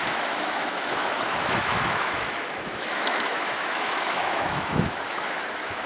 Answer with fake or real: fake